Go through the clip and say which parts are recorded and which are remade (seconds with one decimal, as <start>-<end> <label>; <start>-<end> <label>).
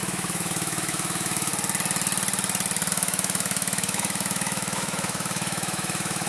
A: 0.0-1.5 remade; 1.5-2.9 recorded; 2.9-6.3 remade